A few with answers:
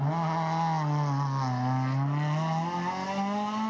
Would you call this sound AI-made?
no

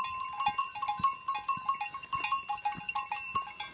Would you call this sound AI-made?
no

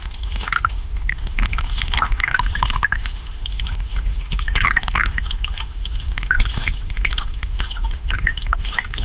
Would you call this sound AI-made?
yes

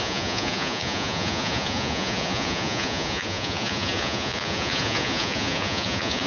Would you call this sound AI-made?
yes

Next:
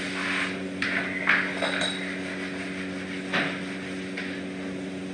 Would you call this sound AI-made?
no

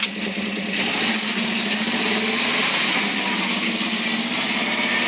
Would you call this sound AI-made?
no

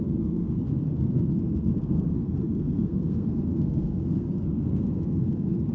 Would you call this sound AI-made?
yes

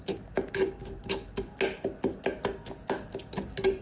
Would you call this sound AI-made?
no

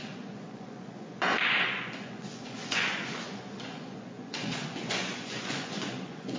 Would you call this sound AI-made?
yes